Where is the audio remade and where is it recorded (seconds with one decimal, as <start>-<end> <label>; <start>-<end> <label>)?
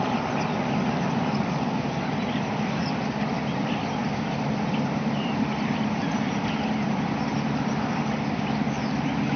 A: 0.0-9.4 recorded